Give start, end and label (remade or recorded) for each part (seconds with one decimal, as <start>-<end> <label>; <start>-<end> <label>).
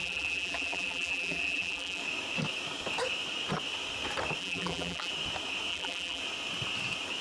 0.0-2.0 remade; 2.0-4.4 recorded; 4.4-5.1 remade; 5.1-5.7 recorded; 5.7-6.2 remade; 6.2-7.2 recorded